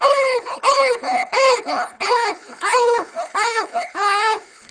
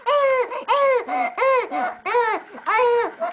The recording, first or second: second